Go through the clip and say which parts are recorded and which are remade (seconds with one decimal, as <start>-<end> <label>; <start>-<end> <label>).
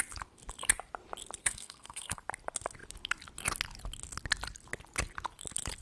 0.0-1.4 recorded; 1.4-2.2 remade; 2.2-5.8 recorded